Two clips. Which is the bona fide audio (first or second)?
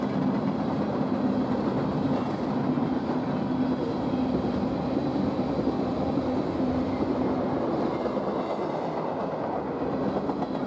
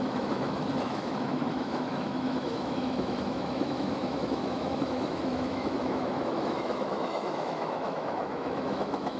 first